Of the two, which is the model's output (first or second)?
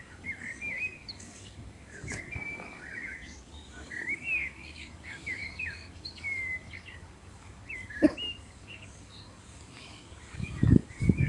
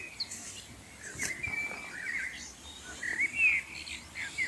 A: first